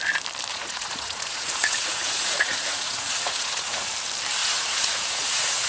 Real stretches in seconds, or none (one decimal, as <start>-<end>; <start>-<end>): 0.0-0.5; 3.9-4.4